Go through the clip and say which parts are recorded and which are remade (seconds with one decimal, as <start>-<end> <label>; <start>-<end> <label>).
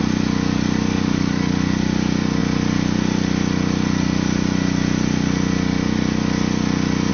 0.0-0.9 recorded; 0.9-1.5 remade; 1.5-7.1 recorded